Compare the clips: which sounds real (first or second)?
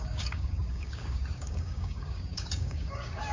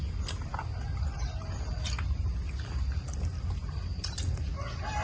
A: second